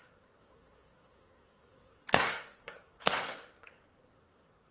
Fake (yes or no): yes